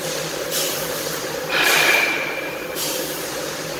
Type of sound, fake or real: fake